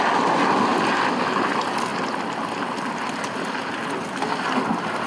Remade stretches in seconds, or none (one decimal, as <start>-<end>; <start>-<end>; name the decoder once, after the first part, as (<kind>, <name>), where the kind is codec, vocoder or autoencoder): 0.7-1.4 (vocoder, BigVGAN v2); 1.9-3.7